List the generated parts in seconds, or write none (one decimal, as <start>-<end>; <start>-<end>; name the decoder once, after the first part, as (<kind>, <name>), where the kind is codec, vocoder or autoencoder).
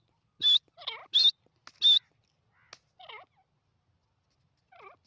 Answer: none